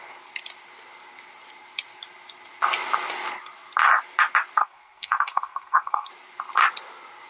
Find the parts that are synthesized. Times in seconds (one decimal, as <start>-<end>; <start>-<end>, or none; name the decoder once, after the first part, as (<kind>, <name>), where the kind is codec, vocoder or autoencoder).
4.6-6.1 (codec, SNAC)